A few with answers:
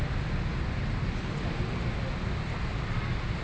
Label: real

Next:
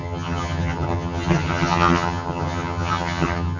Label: fake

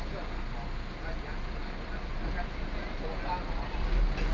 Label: real